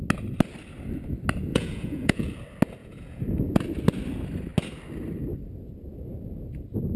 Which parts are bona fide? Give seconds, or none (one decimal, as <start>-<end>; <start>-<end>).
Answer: 0.0-1.5; 2.3-2.8; 3.6-7.0